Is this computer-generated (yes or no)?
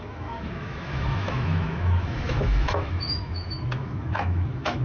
yes